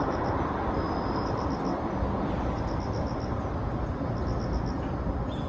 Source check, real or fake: real